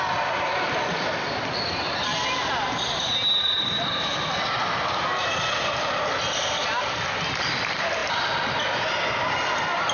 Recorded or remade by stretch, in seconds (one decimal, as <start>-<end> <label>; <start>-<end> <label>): 0.0-2.1 remade; 2.1-7.2 recorded; 7.2-8.0 remade; 8.0-8.8 recorded; 8.8-9.9 remade